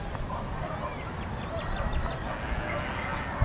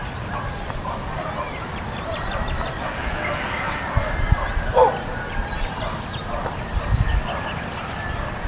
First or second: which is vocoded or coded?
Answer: second